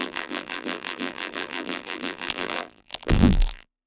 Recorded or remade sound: remade